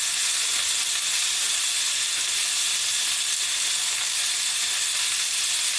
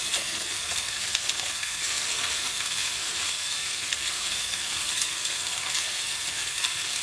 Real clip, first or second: first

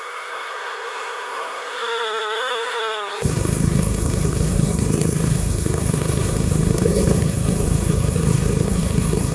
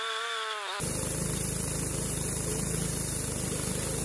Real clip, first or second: second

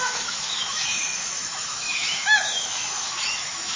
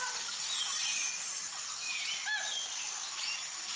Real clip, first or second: second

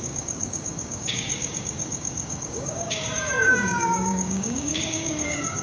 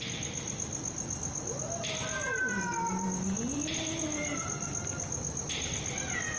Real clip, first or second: second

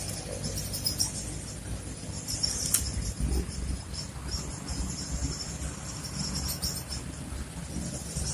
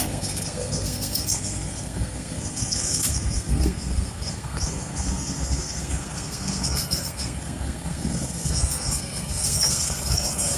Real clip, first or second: first